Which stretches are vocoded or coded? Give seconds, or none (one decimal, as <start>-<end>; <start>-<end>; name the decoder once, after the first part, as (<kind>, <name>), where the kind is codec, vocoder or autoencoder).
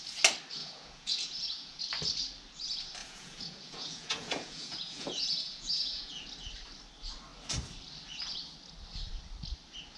0.6-1.8 (vocoder, Vocos); 3.0-6.2